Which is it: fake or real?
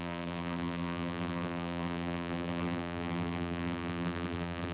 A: fake